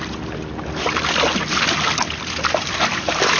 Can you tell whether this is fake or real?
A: real